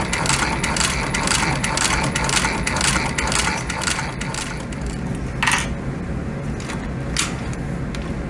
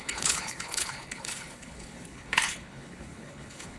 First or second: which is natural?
first